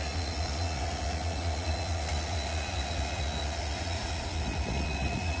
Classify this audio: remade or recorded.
remade